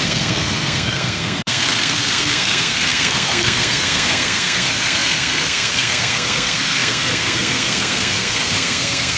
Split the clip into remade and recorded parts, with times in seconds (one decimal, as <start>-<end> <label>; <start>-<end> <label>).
0.0-9.2 remade